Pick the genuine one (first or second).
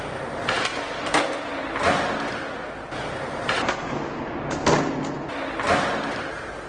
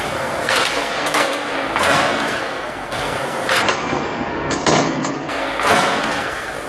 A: first